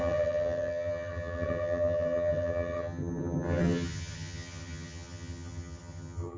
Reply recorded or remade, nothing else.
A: remade